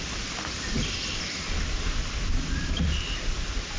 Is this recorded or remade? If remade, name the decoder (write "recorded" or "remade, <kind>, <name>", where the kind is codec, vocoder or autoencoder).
recorded